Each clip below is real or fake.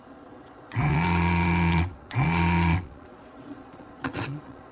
fake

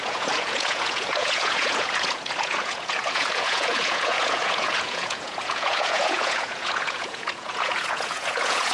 fake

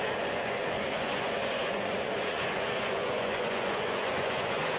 fake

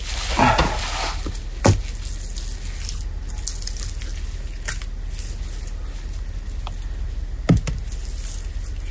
real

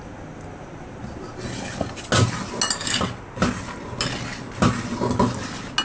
real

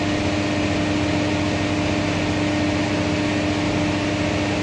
real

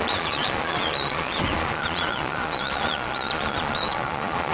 fake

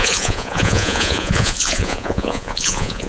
fake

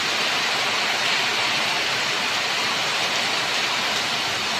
real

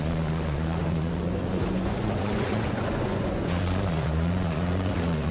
fake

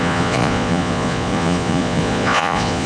fake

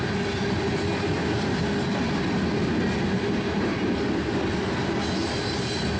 real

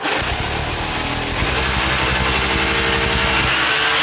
real